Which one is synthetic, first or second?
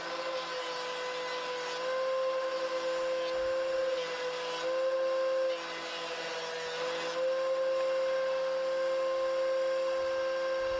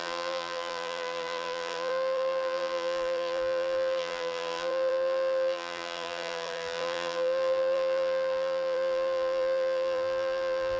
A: second